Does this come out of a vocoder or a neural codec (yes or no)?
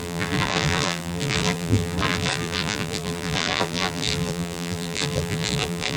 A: yes